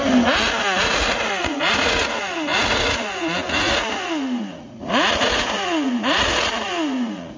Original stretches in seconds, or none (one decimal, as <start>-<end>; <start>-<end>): 0.0-0.8

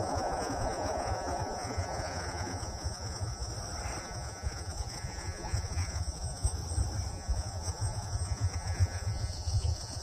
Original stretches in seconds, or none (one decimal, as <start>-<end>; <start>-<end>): 3.5-4.0; 6.6-7.1

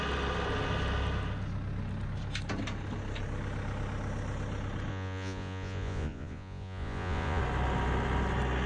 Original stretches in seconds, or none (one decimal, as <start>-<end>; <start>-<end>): 0.0-4.9; 7.4-8.7

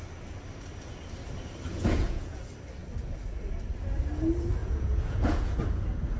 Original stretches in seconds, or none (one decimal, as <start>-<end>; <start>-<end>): 0.0-1.7; 2.4-4.6; 5.6-6.2

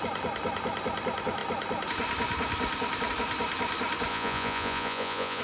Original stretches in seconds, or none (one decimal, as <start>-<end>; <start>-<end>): 0.0-4.1

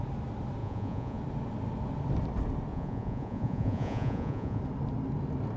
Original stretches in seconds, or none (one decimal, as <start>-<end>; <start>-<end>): 0.0-0.6; 1.2-2.7; 4.6-5.6

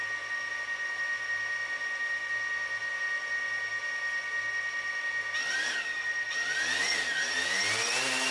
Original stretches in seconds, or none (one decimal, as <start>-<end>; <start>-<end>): 0.0-8.3

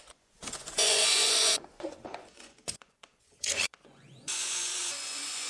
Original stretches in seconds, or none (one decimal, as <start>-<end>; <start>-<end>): none